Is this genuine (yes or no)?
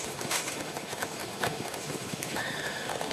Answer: no